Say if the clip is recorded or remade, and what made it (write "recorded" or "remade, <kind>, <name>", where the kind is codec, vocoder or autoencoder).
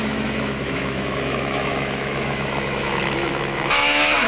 remade, autoencoder, DAC-VAE